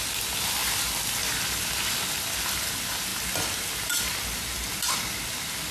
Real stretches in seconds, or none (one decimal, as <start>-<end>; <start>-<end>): 0.0-5.7